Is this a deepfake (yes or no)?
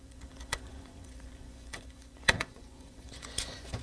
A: yes